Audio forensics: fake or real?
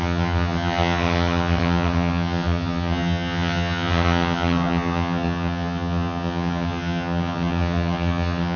fake